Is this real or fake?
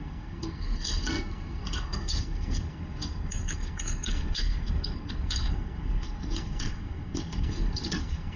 fake